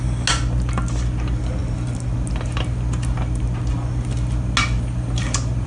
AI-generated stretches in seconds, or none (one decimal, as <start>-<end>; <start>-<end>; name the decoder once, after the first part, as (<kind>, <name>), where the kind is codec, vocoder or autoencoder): none